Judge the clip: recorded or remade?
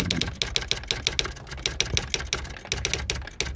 recorded